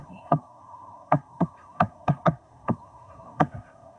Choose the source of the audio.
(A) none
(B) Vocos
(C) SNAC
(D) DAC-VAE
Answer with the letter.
C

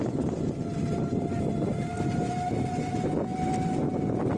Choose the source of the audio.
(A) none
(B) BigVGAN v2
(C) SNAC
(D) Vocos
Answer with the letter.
A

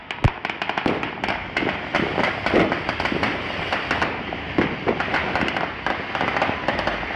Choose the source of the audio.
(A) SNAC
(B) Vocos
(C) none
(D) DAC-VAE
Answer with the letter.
C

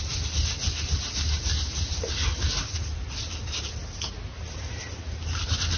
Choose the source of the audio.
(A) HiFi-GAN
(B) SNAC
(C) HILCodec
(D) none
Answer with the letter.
D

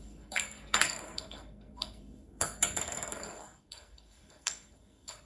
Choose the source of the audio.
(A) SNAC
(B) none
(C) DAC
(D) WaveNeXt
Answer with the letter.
A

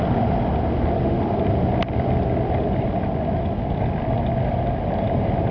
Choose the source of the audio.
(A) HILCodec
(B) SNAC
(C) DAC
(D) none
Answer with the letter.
D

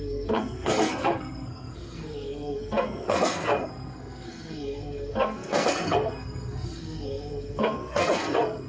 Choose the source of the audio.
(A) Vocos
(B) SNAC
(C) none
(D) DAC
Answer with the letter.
B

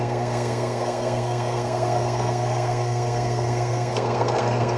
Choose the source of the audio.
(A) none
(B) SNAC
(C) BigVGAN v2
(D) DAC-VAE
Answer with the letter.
B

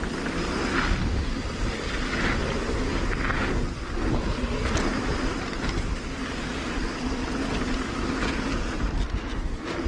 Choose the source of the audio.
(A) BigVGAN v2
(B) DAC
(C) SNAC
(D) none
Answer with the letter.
D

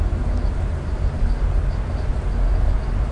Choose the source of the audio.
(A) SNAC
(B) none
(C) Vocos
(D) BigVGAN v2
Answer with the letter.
B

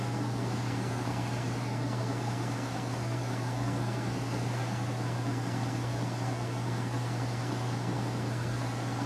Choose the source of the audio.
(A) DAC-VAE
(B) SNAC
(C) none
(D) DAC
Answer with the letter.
B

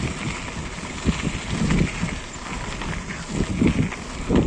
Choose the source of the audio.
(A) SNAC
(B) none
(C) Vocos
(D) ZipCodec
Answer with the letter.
B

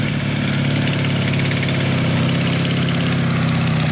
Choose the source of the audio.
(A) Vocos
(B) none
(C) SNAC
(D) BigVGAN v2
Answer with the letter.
B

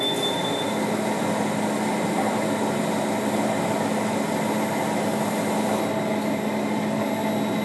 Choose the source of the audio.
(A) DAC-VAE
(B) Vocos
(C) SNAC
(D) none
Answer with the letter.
D